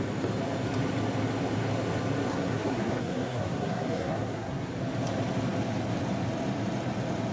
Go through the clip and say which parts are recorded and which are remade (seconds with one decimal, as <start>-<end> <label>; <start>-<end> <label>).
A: 0.0-2.3 recorded; 2.3-4.7 remade; 4.7-7.3 recorded